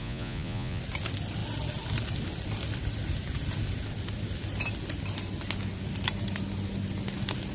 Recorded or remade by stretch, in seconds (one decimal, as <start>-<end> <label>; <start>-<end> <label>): 0.0-0.8 remade; 0.8-7.5 recorded